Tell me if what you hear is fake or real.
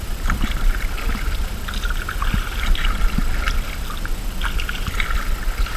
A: real